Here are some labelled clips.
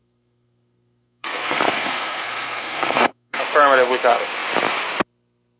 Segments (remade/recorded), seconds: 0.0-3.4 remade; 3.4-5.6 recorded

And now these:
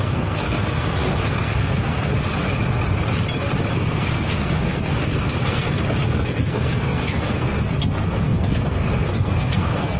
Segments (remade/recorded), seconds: 0.0-2.1 remade; 2.1-3.7 recorded; 3.7-10.0 remade

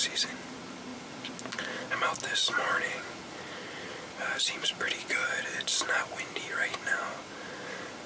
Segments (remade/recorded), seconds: 0.0-8.1 recorded